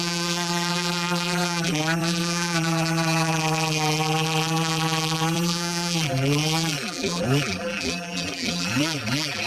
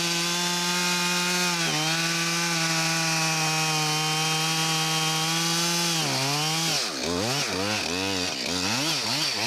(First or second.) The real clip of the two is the second